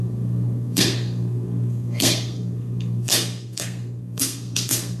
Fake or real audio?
fake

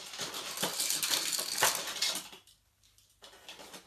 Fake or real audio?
real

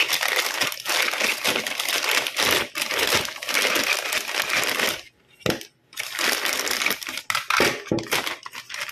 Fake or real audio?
real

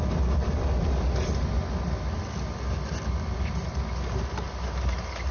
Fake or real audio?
real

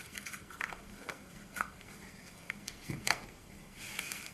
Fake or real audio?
fake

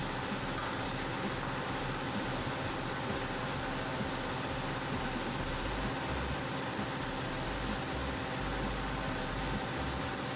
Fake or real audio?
real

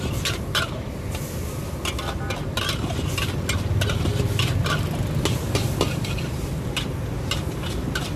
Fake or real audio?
real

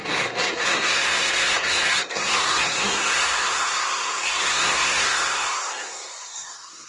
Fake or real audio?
fake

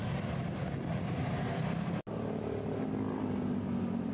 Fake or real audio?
real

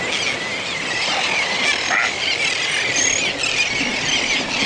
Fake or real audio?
real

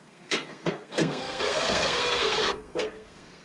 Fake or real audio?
fake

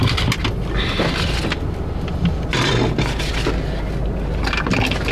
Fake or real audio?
real